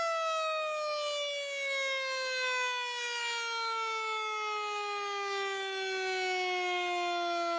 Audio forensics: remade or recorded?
recorded